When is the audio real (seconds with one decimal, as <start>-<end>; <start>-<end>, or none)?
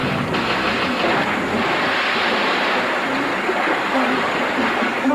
0.0-3.3